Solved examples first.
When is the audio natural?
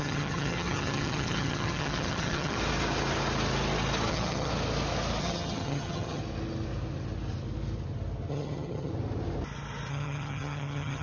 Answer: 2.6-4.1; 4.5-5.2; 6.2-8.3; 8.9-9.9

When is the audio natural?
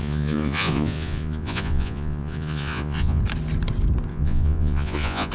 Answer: 3.2-4.1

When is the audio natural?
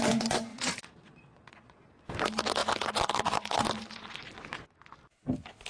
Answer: 0.0-0.5; 1.8-5.7